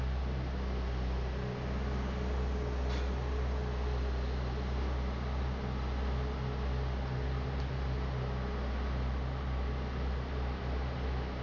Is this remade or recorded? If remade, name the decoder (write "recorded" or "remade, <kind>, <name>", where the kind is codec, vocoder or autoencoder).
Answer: recorded